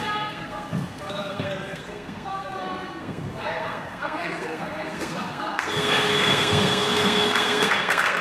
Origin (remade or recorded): remade